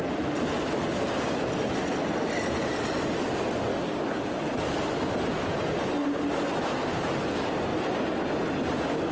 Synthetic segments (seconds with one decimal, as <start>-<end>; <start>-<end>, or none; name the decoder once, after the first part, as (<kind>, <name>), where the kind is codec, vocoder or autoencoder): none